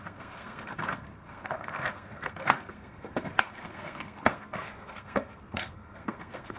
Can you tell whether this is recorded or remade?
remade